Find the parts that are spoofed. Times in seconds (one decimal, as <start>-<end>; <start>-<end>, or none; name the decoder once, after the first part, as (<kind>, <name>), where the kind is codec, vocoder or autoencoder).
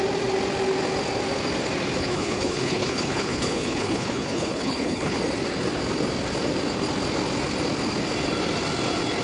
2.0-5.2 (codec, HILCodec)